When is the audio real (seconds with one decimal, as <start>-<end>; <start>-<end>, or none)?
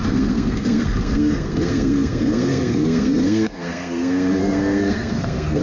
none